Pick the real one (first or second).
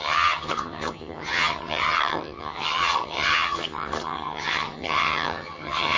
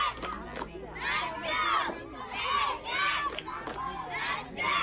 second